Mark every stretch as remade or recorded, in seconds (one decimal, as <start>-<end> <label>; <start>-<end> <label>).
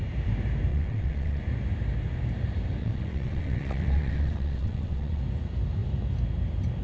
0.0-0.7 recorded; 0.7-1.4 remade; 1.4-2.8 recorded; 2.8-5.2 remade; 5.2-6.8 recorded